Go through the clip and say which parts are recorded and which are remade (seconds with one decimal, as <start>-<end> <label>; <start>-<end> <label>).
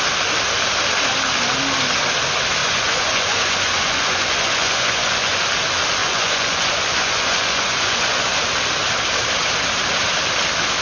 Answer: 0.0-2.6 recorded; 2.6-5.4 remade; 5.4-6.0 recorded; 6.0-8.4 remade; 8.4-10.8 recorded